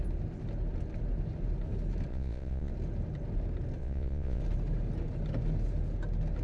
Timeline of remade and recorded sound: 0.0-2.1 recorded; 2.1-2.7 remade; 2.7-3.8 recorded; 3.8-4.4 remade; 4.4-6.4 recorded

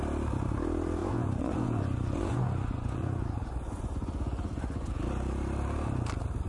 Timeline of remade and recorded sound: 0.0-1.0 recorded; 1.0-4.9 remade; 4.9-6.5 recorded

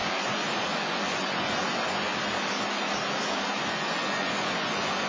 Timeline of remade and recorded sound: 0.0-2.1 remade; 2.1-3.6 recorded; 3.6-5.1 remade

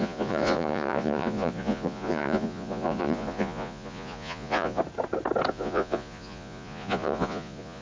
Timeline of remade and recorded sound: 0.0-4.8 remade; 4.8-5.5 recorded; 5.5-7.8 remade

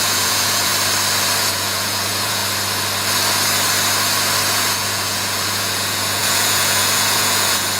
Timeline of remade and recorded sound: 0.0-0.7 remade; 0.7-1.5 recorded; 1.5-2.4 remade; 2.4-4.5 recorded; 4.5-7.8 remade

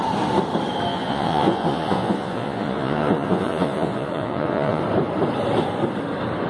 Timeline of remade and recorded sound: 0.0-0.9 recorded; 0.9-4.8 remade; 4.8-6.5 recorded

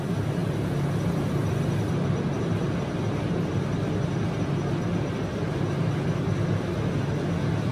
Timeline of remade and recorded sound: 0.0-7.7 recorded

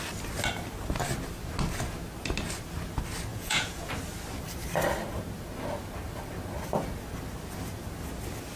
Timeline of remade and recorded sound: 0.0-3.3 recorded; 3.3-3.9 remade; 3.9-8.6 recorded